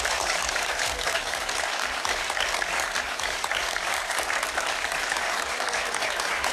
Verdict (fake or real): fake